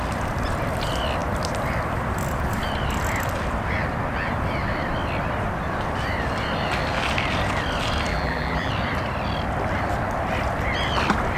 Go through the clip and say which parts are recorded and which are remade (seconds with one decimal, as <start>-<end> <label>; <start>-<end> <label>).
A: 0.0-8.1 recorded; 8.1-8.7 remade; 8.7-11.4 recorded

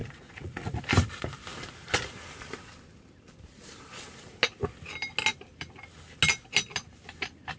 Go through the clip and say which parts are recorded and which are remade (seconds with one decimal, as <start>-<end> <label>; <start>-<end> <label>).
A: 0.0-0.8 remade; 0.8-7.6 recorded

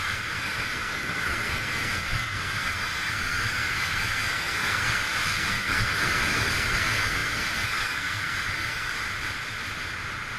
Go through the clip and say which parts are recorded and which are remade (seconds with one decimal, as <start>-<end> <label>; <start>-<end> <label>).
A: 0.0-8.9 remade; 8.9-10.4 recorded

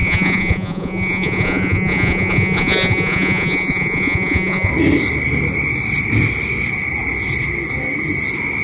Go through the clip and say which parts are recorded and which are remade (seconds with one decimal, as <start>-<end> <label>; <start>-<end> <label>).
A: 0.0-4.7 remade; 4.7-8.6 recorded

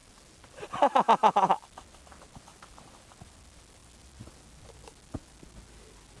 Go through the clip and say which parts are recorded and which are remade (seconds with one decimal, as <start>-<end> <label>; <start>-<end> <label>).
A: 0.0-6.2 recorded